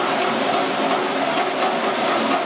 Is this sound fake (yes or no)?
no